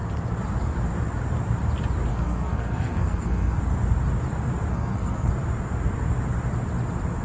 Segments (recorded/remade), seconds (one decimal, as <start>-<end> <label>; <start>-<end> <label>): 0.0-2.1 recorded; 2.1-3.6 remade; 3.6-4.7 recorded; 4.7-5.3 remade; 5.3-7.2 recorded